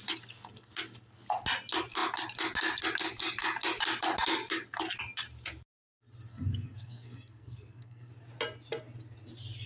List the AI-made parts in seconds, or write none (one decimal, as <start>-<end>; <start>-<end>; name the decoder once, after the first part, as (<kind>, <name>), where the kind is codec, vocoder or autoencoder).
6.3-8.1 (codec, SNAC)